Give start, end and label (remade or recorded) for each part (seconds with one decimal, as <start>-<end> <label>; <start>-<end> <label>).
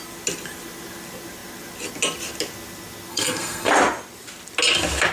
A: 0.0-3.1 recorded; 3.1-3.7 remade; 3.7-5.1 recorded